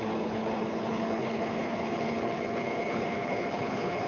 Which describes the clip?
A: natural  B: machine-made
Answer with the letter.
B